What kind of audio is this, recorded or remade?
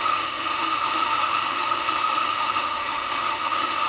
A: remade